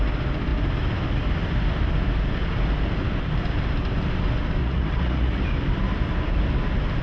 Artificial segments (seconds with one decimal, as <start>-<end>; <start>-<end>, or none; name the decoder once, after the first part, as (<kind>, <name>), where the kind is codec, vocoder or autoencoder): 4.6-5.4 (vocoder, Vocos)

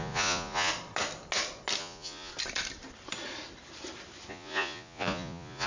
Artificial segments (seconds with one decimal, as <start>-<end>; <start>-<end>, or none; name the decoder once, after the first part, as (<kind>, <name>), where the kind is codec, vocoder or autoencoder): 0.0-0.7 (vocoder, Vocos); 1.8-2.3; 4.3-5.7

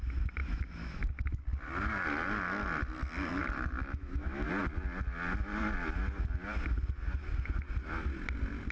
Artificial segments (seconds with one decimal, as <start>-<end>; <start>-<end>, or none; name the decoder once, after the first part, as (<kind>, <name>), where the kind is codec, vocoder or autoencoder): 0.4-1.1 (autoencoder, DAC-VAE); 3.4-4.5